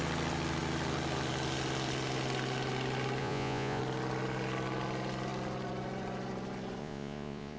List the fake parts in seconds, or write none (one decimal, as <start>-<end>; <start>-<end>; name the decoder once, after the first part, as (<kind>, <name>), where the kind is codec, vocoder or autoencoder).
3.2-3.8 (vocoder, Vocos); 6.8-7.6